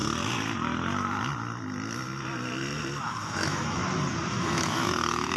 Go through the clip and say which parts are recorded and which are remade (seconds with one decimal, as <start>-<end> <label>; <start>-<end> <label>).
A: 0.0-3.0 recorded; 3.0-3.8 remade; 3.8-4.3 recorded; 4.3-5.4 remade